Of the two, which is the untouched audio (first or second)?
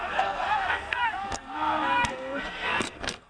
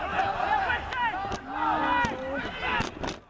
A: second